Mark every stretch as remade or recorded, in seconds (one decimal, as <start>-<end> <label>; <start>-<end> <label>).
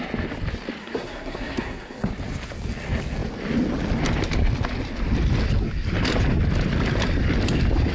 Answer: 0.0-0.8 recorded; 0.8-2.1 remade; 2.1-7.9 recorded